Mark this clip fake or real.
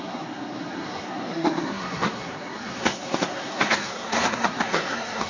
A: fake